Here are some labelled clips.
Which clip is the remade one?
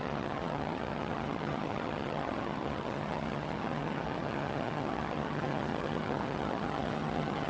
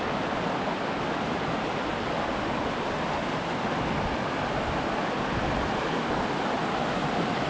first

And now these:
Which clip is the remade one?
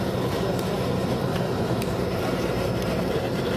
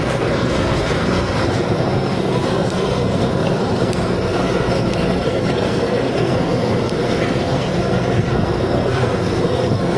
second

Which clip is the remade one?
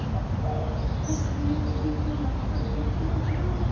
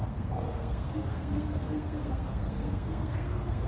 second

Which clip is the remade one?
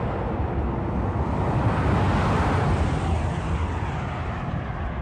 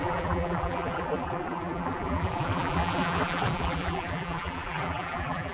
second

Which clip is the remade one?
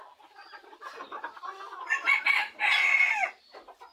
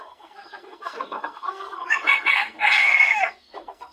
second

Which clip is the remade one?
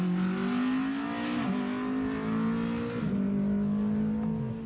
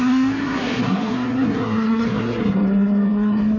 second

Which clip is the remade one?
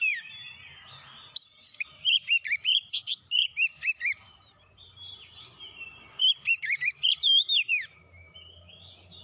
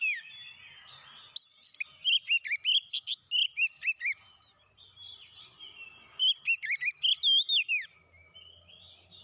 first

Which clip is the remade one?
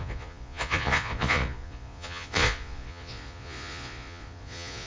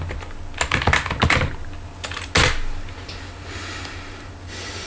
first